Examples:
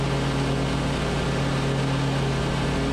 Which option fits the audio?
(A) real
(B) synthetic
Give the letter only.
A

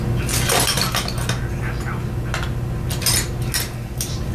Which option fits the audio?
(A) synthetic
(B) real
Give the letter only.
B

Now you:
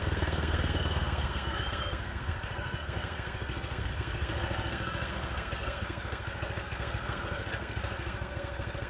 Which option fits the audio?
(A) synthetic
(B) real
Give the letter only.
A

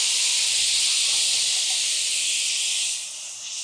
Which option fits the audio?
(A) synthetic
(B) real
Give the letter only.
B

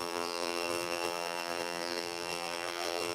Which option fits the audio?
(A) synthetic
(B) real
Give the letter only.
A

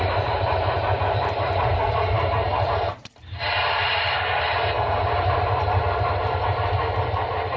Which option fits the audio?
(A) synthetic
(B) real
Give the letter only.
A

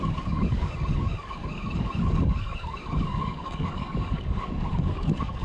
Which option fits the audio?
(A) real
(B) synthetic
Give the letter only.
B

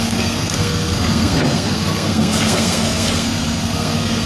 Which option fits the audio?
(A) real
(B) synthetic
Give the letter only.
B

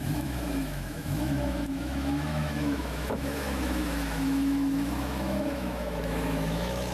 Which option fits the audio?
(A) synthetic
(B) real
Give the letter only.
A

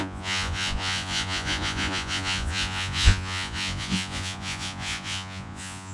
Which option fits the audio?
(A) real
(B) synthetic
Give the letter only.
B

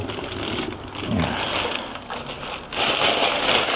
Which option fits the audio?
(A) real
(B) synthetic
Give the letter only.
A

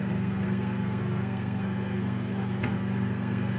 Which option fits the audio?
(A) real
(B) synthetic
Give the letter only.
B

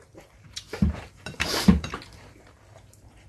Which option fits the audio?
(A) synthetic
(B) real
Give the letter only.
A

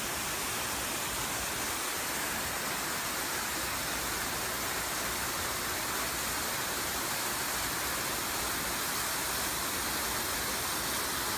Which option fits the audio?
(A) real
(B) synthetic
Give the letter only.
A